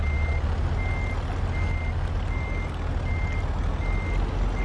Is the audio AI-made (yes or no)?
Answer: no